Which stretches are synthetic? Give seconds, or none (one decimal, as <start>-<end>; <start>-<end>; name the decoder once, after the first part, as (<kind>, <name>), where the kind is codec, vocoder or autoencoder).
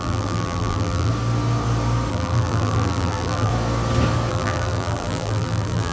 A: 0.0-1.1 (vocoder, BigVGAN v2); 2.1-3.5; 4.3-5.9